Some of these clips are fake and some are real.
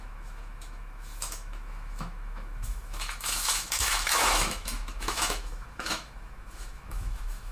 fake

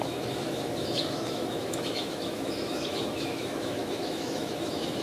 fake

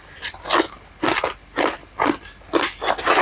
real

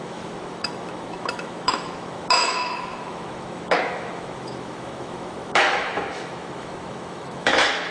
fake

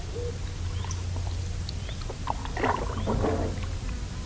real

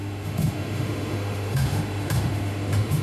fake